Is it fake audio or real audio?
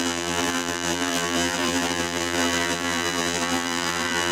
fake